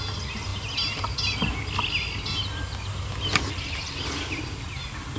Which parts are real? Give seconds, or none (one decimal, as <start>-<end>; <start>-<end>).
0.0-5.2